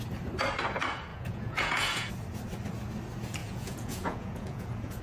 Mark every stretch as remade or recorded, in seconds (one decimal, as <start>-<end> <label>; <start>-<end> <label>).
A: 0.0-1.1 recorded; 1.1-2.1 remade; 2.1-3.4 recorded; 3.4-5.0 remade